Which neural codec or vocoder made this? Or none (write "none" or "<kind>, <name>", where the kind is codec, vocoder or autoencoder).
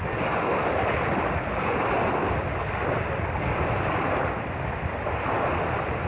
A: none